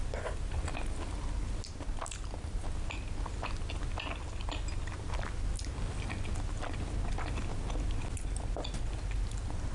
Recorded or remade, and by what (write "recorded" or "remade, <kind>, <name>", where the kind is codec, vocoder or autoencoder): recorded